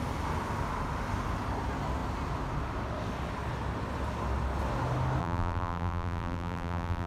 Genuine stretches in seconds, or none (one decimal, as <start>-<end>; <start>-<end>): 0.0-5.2